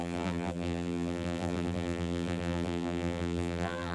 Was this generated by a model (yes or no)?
yes